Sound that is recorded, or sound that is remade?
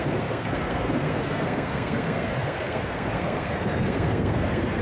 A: remade